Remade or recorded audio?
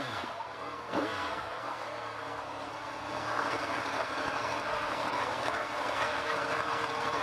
remade